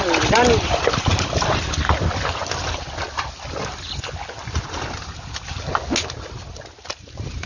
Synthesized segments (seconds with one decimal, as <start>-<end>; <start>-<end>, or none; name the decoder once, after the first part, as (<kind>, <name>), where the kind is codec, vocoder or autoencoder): none